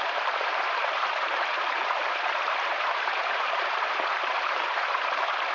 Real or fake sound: fake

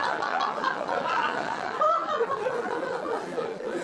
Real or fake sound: fake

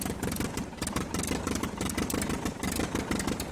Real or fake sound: real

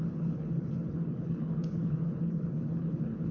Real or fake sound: fake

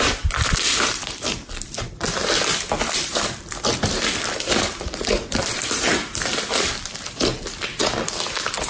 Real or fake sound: fake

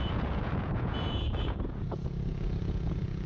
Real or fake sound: fake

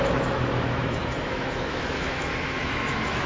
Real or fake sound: fake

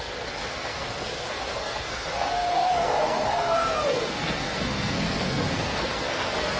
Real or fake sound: fake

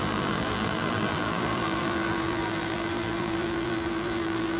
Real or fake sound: fake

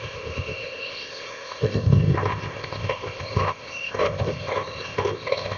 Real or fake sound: fake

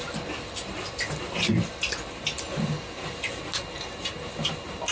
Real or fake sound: real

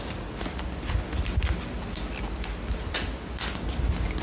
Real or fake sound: real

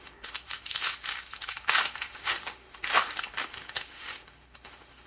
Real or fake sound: fake